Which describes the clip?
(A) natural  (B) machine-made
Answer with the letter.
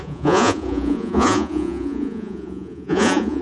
B